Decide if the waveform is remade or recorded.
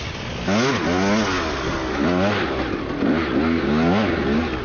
recorded